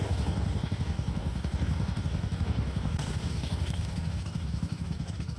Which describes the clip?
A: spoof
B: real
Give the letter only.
A